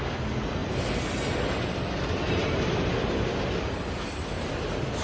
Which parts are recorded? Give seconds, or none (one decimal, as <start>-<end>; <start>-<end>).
0.0-2.2; 3.5-5.0